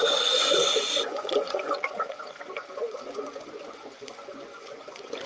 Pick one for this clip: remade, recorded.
remade